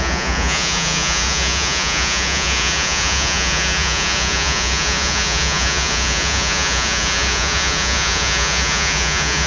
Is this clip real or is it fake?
fake